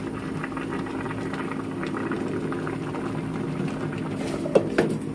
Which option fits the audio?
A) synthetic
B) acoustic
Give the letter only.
B